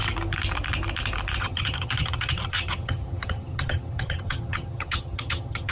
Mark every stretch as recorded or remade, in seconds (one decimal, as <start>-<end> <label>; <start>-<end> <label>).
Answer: 0.0-1.4 recorded; 1.4-5.7 remade

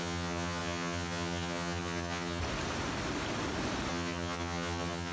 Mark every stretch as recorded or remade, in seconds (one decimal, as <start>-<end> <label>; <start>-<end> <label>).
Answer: 0.0-2.4 remade; 2.4-3.9 recorded; 3.9-5.1 remade

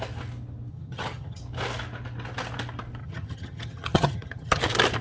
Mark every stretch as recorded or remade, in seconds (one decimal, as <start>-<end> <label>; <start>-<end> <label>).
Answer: 0.0-0.7 recorded; 0.7-1.4 remade; 1.4-3.0 recorded; 3.0-4.6 remade; 4.6-5.0 recorded

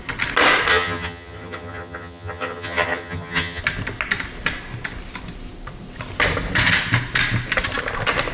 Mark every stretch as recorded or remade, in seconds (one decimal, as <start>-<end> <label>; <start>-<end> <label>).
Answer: 0.0-0.7 recorded; 0.7-3.6 remade; 3.6-8.3 recorded

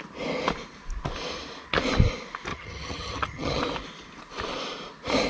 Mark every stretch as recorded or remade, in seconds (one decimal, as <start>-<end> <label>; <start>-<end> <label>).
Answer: 0.0-2.5 recorded; 2.5-3.6 remade; 3.6-5.3 recorded

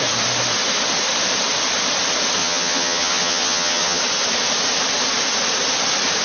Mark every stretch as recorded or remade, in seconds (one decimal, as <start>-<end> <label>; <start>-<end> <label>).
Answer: 0.0-2.4 recorded; 2.4-4.0 remade; 4.0-6.2 recorded

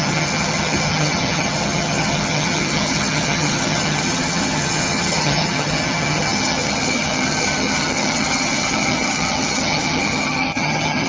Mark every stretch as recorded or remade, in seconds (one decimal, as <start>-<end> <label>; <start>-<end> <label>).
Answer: 0.0-11.1 remade